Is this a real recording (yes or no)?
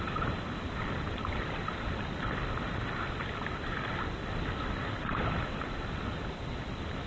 yes